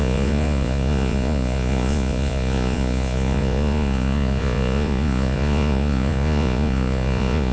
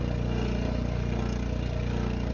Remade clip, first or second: first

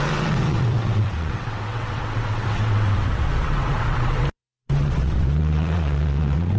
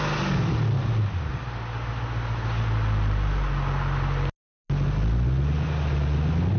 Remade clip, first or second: first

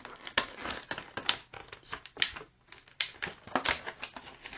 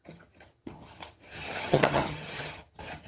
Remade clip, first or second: second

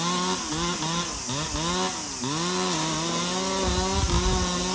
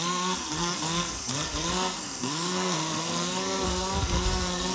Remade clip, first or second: second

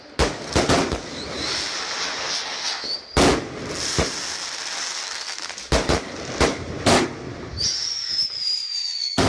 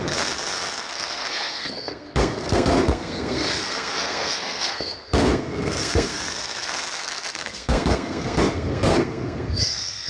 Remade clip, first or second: second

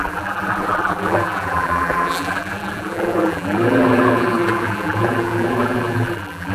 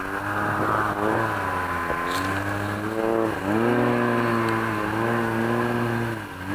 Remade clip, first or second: first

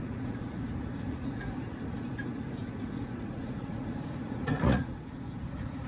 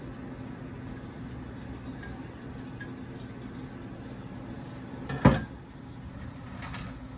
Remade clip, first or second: first